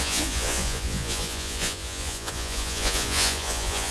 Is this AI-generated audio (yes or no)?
yes